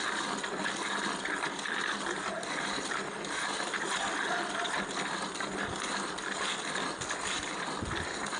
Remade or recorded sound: recorded